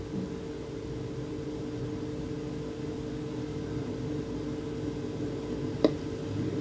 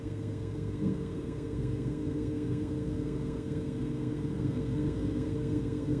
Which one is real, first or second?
first